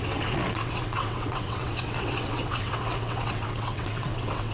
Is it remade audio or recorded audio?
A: remade